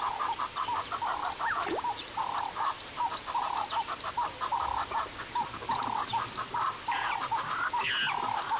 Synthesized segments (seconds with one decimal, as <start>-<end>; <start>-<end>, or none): none